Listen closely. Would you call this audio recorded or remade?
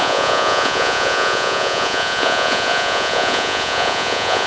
remade